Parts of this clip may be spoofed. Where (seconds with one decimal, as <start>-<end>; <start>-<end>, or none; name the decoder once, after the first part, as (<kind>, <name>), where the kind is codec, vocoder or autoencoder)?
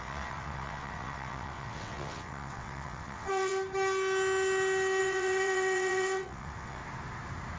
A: 0.0-3.5 (vocoder, WaveNeXt); 5.0-6.8